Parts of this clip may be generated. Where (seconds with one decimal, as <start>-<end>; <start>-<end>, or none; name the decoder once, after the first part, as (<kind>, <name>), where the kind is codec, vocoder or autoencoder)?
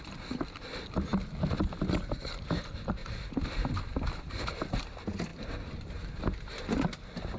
3.0-3.8 (vocoder, BigVGAN v2); 5.3-6.6